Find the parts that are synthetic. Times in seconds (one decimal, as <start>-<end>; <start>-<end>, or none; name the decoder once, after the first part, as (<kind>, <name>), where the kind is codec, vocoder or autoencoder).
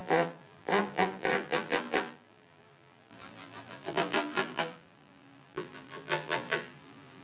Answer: 0.0-7.2 (vocoder, BigVGAN v2)